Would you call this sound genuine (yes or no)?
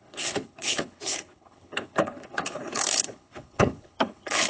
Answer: no